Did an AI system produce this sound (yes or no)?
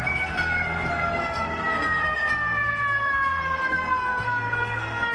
yes